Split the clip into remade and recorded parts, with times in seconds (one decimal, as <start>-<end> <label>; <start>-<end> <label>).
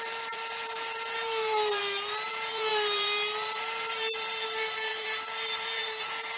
0.0-1.8 remade; 1.8-2.3 recorded; 2.3-6.4 remade